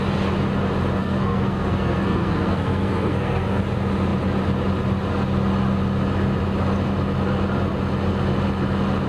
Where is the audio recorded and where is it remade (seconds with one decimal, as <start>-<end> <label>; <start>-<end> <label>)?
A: 0.0-1.0 recorded; 1.0-3.6 remade; 3.6-9.1 recorded